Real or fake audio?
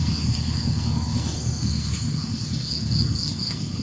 fake